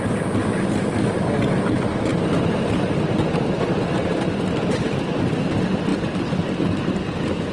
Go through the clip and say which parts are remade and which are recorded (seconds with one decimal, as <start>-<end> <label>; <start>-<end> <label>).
0.0-7.5 recorded